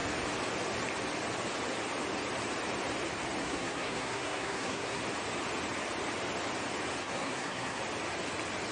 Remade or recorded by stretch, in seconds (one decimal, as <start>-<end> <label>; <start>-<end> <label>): 0.0-3.4 recorded; 3.4-5.0 remade; 5.0-7.0 recorded; 7.0-7.8 remade; 7.8-8.7 recorded